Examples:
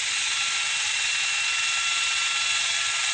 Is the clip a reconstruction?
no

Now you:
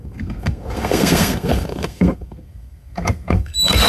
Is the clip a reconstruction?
yes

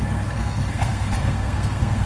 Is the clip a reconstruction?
yes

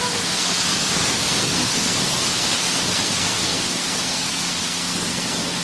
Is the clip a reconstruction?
yes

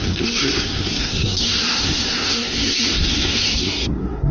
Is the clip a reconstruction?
yes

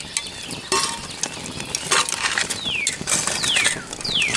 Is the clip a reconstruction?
no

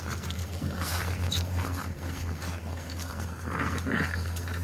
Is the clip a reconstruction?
yes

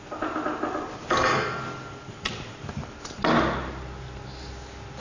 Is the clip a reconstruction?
no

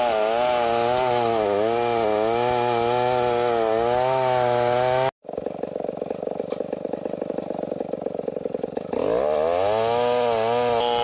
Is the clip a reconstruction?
no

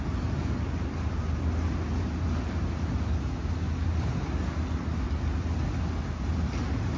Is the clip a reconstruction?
no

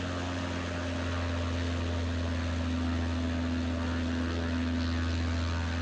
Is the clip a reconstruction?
no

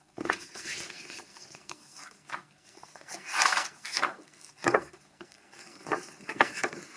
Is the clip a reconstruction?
yes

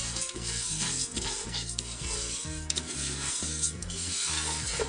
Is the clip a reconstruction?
yes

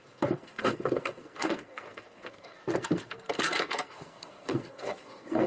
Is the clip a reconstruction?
yes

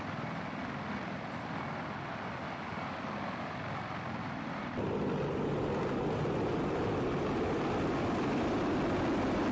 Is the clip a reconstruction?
no